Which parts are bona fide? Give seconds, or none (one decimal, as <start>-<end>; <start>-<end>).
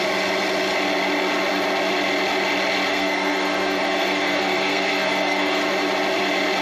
0.0-2.9; 5.6-6.6